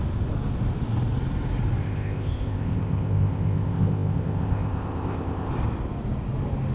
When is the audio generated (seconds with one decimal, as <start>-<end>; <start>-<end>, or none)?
1.8-5.5